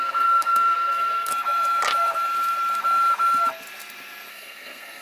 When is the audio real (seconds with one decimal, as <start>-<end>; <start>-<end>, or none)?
1.3-4.3